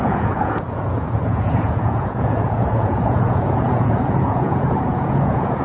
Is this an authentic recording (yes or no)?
no